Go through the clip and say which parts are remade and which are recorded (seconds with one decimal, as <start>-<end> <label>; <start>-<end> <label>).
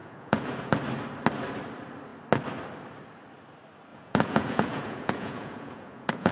0.0-0.7 remade; 0.7-3.9 recorded; 3.9-6.3 remade